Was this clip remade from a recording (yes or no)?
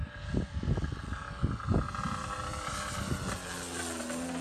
no